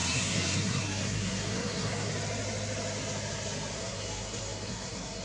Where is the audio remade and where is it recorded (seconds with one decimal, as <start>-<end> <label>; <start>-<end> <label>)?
0.0-2.1 remade; 2.1-3.8 recorded; 3.8-5.2 remade